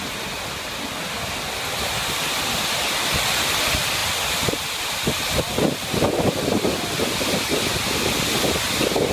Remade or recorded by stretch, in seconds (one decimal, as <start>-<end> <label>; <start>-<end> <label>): 0.0-9.1 recorded